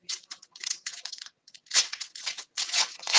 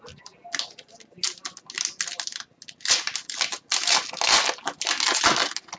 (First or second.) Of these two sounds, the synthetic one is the first